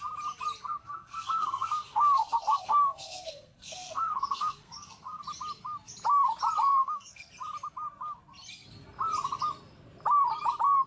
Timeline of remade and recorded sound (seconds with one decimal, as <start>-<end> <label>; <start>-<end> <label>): 0.0-0.8 recorded; 0.8-5.2 remade; 5.2-6.8 recorded; 6.8-7.3 remade; 7.3-10.9 recorded